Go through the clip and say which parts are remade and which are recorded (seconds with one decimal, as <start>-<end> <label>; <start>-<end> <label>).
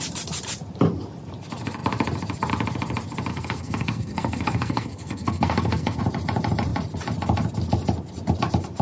0.0-3.3 recorded; 3.3-6.0 remade; 6.0-8.8 recorded